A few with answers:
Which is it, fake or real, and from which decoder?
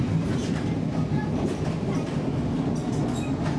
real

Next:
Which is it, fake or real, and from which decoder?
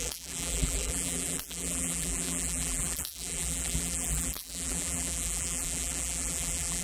fake, vocoder, BigVGAN v2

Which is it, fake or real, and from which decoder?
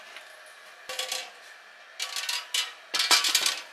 real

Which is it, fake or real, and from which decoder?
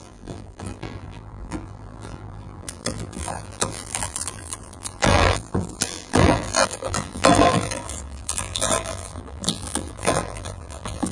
fake, vocoder, BigVGAN v2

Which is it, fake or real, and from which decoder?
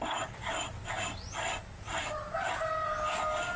real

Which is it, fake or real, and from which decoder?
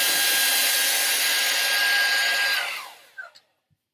real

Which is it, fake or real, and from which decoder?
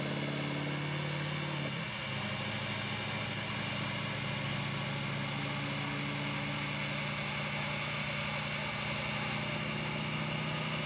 real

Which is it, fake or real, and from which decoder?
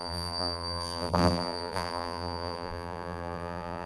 fake, vocoder, BigVGAN v2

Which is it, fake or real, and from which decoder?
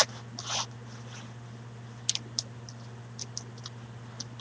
real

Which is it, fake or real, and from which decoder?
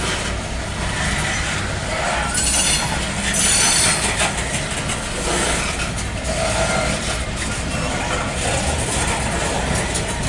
real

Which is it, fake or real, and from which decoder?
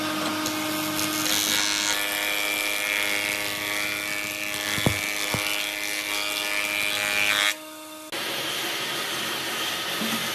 real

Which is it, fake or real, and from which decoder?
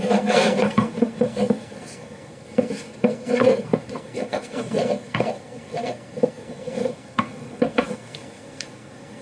fake, codec, SNAC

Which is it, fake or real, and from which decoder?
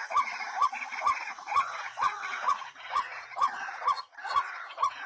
fake, vocoder, Vocos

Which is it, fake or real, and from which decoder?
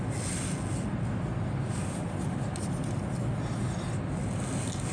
real